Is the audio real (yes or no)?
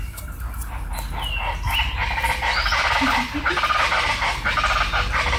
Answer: yes